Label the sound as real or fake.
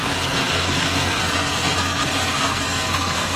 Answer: fake